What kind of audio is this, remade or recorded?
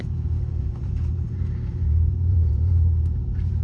remade